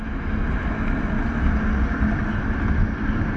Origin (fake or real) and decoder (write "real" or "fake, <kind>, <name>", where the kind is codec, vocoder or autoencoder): real